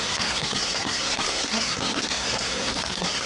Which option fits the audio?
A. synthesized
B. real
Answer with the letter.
A